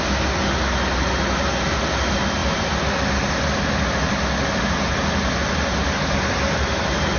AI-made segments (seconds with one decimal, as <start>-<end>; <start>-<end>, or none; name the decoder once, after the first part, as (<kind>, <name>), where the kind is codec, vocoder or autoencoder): none